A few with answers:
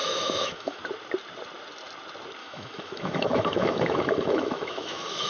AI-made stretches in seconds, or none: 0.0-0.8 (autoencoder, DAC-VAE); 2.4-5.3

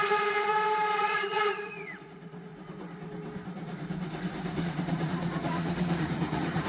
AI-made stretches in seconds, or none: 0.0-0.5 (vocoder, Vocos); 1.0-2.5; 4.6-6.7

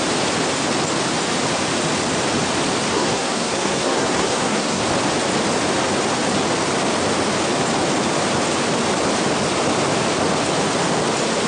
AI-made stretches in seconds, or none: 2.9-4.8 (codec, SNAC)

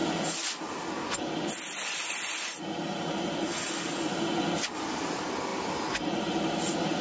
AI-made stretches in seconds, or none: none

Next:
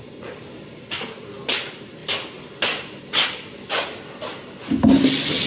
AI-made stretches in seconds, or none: none